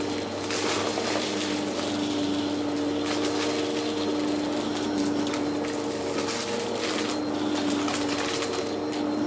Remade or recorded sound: recorded